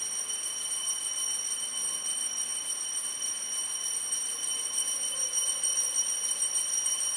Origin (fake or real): real